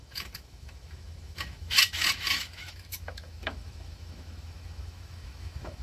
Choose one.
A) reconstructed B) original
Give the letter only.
A